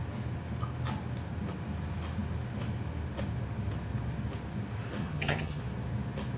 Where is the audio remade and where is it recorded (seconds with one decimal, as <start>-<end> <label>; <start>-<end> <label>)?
0.0-5.0 recorded; 5.0-5.6 remade; 5.6-6.4 recorded